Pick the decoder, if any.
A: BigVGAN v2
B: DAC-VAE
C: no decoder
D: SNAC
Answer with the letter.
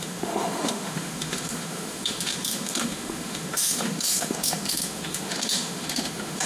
B